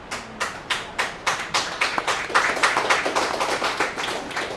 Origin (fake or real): real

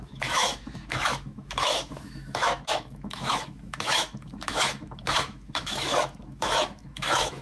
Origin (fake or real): fake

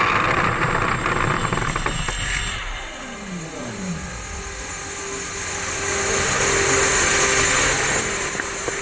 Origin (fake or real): real